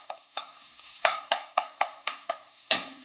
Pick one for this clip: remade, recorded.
remade